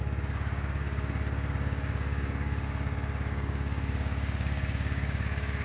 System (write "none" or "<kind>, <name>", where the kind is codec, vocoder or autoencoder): codec, DAC